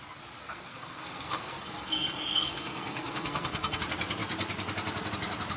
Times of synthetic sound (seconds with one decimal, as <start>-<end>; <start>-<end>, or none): 0.4-3.8